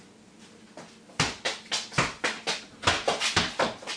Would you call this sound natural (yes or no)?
yes